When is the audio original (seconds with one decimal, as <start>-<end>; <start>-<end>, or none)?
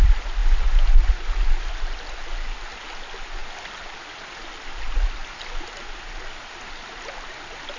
0.0-7.8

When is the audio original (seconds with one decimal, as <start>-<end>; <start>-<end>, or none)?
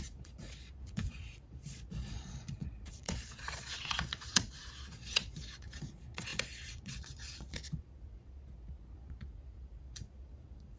none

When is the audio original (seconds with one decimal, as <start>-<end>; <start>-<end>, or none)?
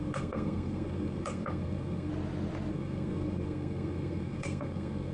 2.1-2.7